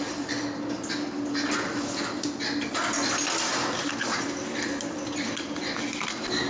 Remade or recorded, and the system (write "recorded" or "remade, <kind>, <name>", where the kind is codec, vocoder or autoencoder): recorded